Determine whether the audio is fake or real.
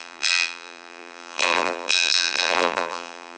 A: fake